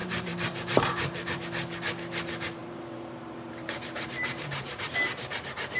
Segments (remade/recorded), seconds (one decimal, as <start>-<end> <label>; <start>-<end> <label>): 0.0-1.4 remade; 1.4-2.6 recorded; 2.6-4.9 remade; 4.9-5.8 recorded